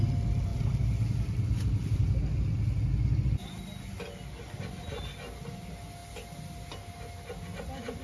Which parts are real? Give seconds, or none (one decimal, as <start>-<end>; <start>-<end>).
0.0-8.0